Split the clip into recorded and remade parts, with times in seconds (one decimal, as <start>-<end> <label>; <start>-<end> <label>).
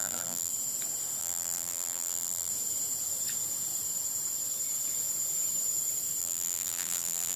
0.0-0.5 remade; 0.5-1.2 recorded; 1.2-2.5 remade; 2.5-6.2 recorded; 6.2-7.4 remade